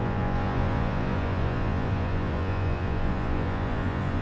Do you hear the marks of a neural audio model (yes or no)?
yes